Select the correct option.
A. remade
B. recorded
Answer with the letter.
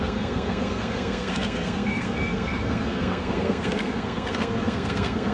A